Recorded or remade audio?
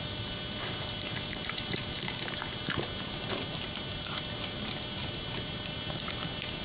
remade